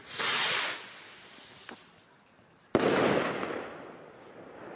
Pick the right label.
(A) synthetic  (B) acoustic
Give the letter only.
B